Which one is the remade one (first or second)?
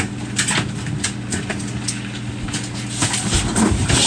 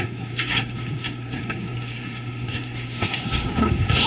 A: second